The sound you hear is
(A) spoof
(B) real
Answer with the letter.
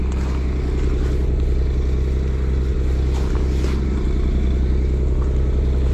B